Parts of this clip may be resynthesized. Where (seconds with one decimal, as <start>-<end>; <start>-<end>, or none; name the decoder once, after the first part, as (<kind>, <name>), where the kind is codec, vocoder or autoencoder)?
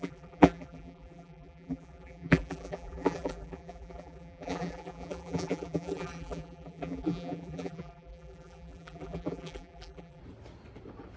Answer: 0.0-10.2 (vocoder, BigVGAN v2)